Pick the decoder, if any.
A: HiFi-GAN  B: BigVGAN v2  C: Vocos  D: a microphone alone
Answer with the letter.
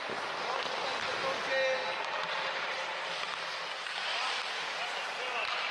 D